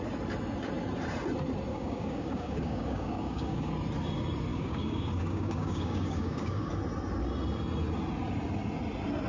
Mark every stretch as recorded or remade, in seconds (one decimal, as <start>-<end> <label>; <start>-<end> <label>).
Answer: 0.0-1.7 recorded; 1.7-3.7 remade; 3.7-4.5 recorded; 4.5-6.7 remade; 6.7-9.3 recorded